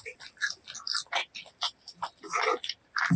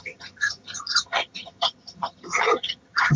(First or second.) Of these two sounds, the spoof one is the second